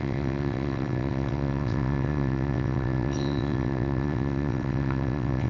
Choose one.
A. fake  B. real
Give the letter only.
A